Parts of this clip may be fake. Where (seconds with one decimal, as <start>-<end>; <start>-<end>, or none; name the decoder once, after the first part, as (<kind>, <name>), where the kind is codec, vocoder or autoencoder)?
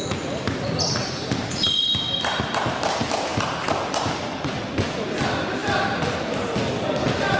none